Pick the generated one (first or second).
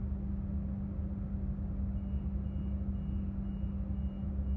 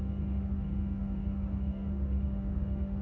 second